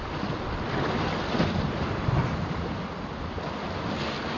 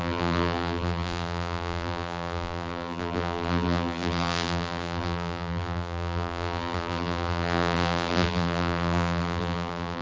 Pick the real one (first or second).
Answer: first